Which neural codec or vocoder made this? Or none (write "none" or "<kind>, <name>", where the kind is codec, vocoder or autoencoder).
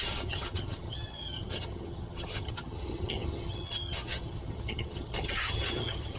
vocoder, HiFi-GAN